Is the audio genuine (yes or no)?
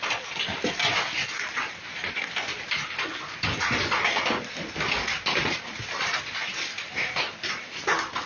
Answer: yes